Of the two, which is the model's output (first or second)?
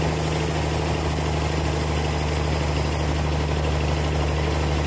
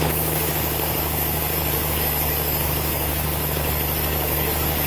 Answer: second